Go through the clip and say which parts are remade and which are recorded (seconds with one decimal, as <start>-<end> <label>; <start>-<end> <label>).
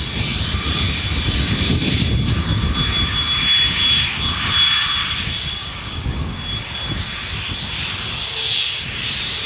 0.0-5.0 recorded; 5.0-6.4 remade; 6.4-9.5 recorded